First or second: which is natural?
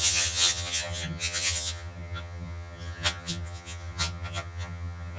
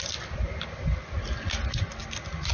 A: second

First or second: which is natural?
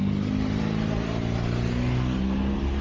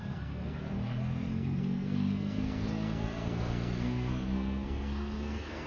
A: first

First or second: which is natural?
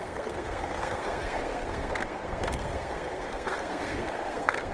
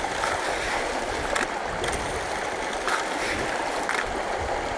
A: second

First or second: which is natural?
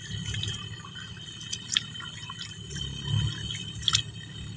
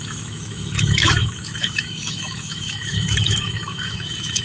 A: first